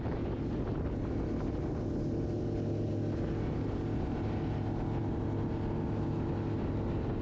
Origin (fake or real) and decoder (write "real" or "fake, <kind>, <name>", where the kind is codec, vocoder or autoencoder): real